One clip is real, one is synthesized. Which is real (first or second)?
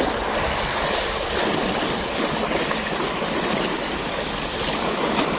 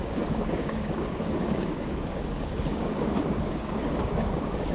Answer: first